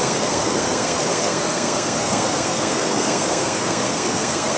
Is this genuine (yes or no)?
no